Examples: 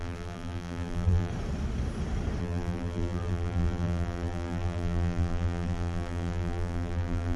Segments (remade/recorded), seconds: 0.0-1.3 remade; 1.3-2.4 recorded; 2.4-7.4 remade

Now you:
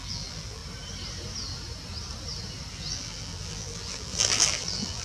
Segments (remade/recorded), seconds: 0.0-0.6 remade; 0.6-2.7 recorded; 2.7-5.0 remade

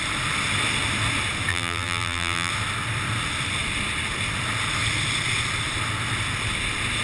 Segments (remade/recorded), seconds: 0.0-1.5 recorded; 1.5-2.5 remade; 2.5-7.0 recorded

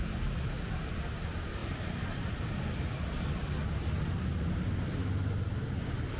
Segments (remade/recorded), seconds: 0.0-6.2 recorded

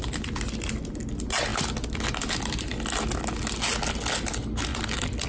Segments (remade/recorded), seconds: 0.0-4.7 recorded; 4.7-5.3 remade

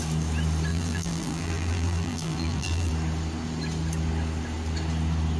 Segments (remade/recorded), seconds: 0.0-0.7 recorded; 0.7-2.9 remade; 2.9-5.4 recorded

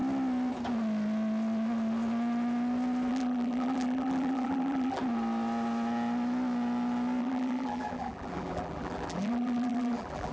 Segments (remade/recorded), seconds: 0.0-3.1 recorded; 3.1-5.0 remade; 5.0-7.2 recorded; 7.2-10.3 remade